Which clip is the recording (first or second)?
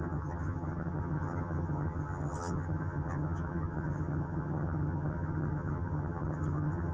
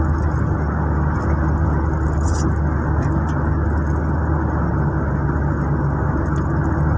second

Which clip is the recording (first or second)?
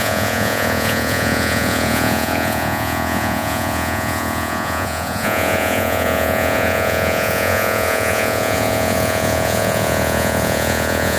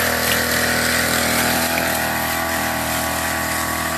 second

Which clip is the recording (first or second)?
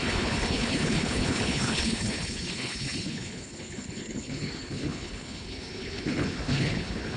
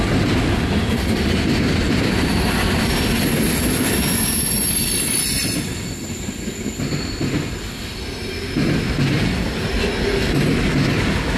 second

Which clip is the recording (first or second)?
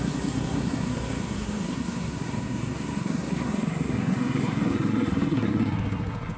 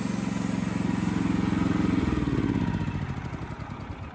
second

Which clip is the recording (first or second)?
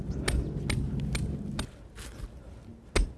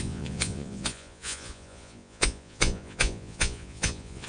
first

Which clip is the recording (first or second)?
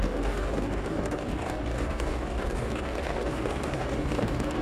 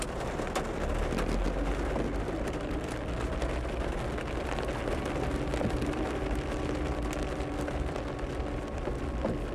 second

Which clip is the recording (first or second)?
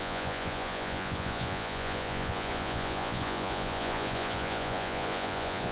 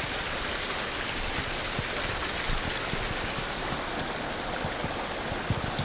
second